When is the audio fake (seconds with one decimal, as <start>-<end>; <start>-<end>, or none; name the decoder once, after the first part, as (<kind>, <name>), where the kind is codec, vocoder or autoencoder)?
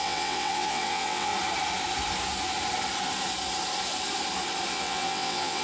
0.0-1.3 (vocoder, WaveNeXt); 4.7-5.6